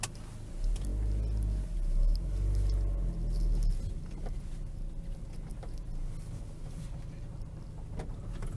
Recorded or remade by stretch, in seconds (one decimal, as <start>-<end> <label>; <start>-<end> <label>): 0.0-8.6 recorded